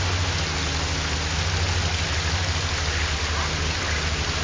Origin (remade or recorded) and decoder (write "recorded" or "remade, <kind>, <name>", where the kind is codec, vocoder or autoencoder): recorded